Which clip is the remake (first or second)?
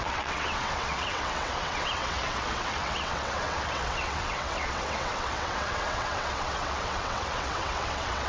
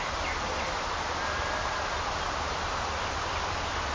first